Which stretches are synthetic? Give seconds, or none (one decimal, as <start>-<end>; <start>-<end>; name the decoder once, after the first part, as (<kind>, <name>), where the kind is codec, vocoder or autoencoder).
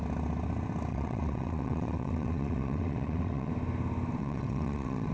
0.9-3.5 (vocoder, WaveNeXt); 4.2-5.1